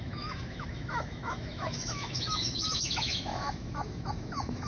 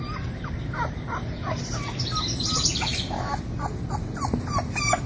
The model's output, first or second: first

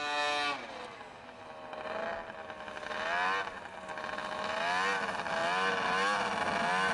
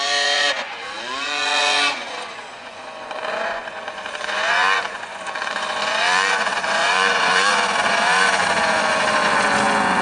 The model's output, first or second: second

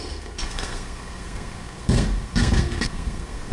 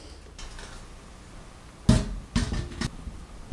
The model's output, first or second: first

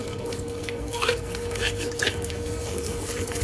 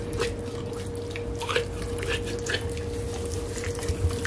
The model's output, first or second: first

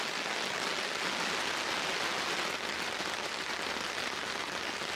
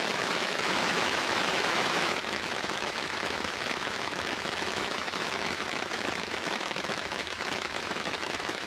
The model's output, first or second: second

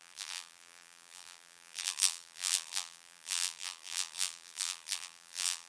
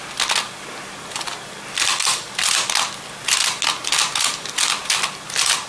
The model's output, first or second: first